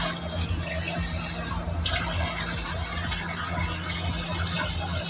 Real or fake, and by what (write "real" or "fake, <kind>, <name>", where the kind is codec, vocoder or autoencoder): real